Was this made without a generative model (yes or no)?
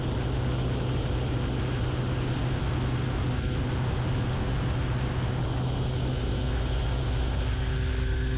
yes